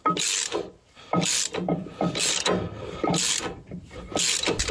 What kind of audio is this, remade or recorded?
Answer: recorded